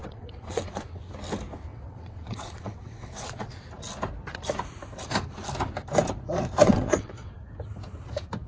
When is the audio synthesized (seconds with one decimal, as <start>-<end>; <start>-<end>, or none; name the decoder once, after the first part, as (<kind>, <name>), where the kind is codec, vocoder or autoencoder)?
0.0-1.0 (vocoder, WaveNeXt); 1.7-3.5; 6.6-7.4